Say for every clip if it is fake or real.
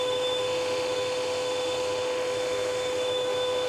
fake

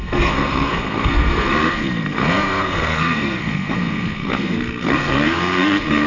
fake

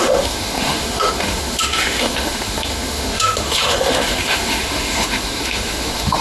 fake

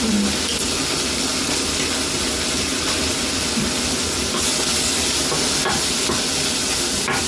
real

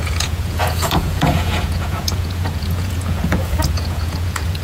fake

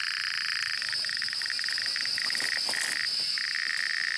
real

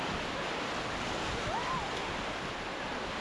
real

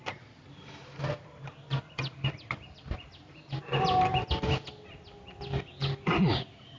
real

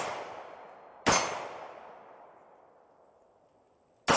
real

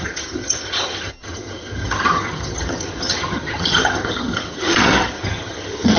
fake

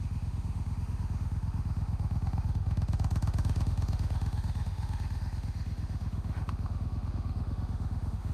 fake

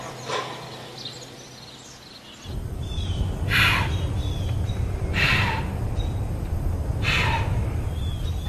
real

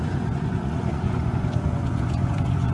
fake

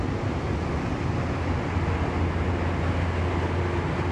real